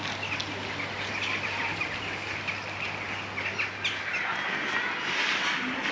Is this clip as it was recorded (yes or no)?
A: yes